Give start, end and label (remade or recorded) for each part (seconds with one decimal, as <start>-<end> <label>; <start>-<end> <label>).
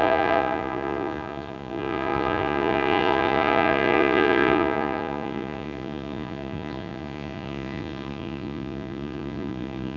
0.0-10.0 remade